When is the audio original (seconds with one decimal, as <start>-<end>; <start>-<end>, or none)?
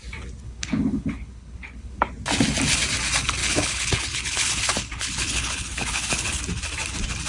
0.0-0.4; 2.0-3.4; 6.4-7.3